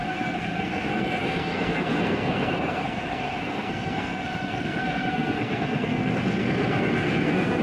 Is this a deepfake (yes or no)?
yes